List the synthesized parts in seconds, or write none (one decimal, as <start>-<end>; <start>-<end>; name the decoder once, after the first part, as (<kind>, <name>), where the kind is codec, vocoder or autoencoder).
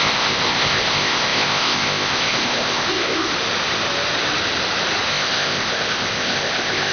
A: 0.0-3.3 (codec, ZipCodec); 5.1-6.9